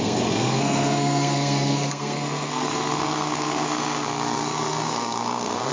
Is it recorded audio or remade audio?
remade